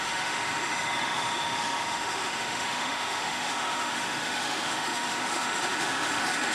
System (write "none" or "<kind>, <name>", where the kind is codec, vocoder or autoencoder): autoencoder, DAC-VAE